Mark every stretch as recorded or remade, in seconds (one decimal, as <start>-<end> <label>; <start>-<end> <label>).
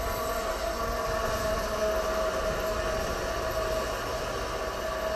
0.0-5.2 recorded